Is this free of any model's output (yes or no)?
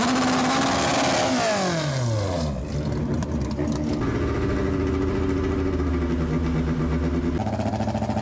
yes